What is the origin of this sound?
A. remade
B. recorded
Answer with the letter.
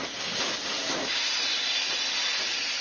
B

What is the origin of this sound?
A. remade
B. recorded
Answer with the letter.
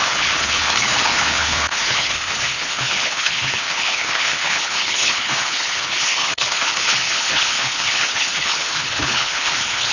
A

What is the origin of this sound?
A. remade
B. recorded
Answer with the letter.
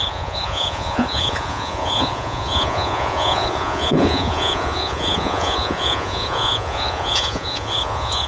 A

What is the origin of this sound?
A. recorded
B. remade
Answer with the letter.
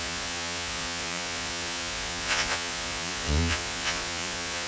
B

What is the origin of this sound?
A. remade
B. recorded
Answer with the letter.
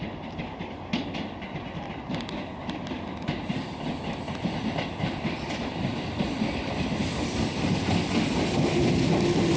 B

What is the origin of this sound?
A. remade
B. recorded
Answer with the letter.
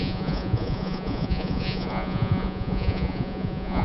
A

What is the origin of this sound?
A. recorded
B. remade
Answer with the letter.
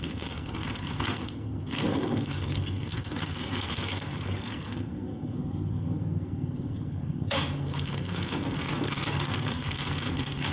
B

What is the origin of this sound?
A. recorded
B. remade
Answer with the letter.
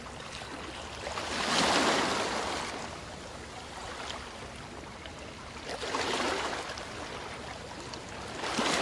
A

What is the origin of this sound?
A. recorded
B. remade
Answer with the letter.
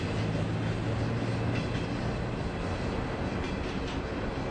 A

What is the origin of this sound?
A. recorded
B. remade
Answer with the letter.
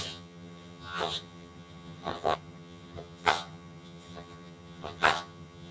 B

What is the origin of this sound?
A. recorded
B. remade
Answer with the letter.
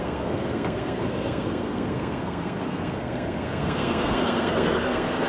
B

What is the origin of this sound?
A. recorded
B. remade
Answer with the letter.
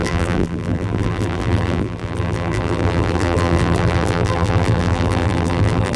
B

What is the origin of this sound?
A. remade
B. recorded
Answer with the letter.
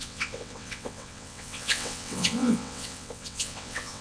A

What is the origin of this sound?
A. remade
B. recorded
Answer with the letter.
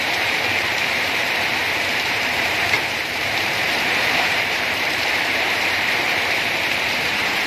A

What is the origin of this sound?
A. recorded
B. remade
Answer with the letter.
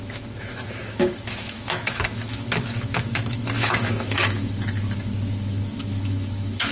B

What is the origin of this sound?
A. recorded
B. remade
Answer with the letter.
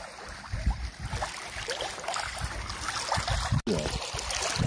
A